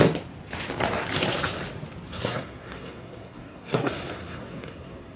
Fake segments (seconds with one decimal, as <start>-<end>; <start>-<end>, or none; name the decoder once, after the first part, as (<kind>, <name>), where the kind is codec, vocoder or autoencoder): 2.1-5.2 (codec, SNAC)

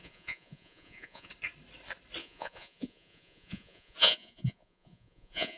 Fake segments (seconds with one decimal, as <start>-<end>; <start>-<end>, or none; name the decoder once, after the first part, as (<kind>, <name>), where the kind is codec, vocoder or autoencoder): 0.0-1.3 (vocoder, Vocos); 2.2-5.6